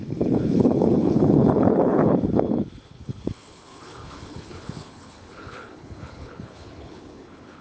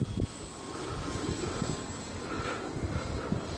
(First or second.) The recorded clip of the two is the second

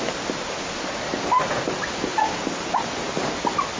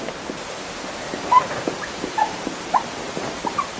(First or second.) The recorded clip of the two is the first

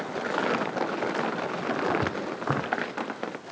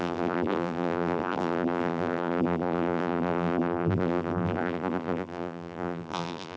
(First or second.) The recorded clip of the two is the first